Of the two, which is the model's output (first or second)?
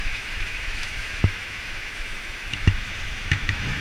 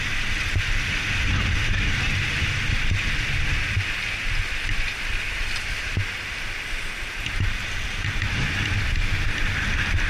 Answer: first